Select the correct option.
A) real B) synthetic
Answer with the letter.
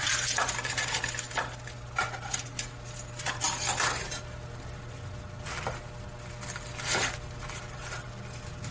A